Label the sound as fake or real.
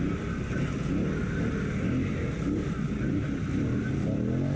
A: real